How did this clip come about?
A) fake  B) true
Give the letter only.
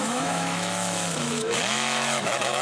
A